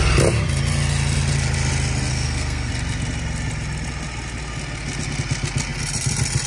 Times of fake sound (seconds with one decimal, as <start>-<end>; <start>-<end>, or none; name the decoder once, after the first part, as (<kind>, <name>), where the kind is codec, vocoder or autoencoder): 2.1-2.7 (codec, SNAC)